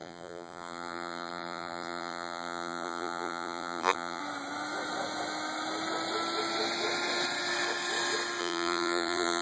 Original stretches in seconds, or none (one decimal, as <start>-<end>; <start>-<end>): 4.2-8.4